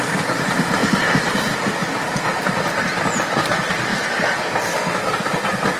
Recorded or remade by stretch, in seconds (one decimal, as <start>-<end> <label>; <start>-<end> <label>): 0.0-5.8 recorded

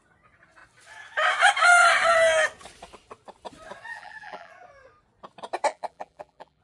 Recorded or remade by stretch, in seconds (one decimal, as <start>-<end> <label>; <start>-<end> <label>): 0.0-3.9 recorded; 3.9-4.5 remade; 4.5-5.7 recorded; 5.7-6.6 remade